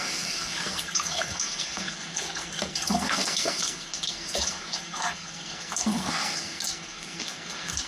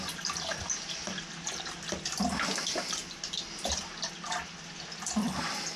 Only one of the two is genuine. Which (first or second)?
second